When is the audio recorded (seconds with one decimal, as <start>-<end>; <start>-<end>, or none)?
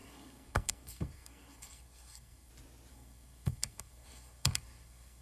2.5-2.9